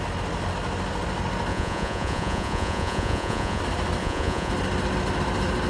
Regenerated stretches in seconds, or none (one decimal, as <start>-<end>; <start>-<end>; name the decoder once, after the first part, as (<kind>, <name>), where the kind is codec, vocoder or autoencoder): 1.5-3.6 (vocoder, Vocos); 4.0-4.5